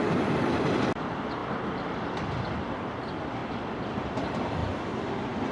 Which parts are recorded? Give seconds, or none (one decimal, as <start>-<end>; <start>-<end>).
0.0-3.4; 3.9-4.6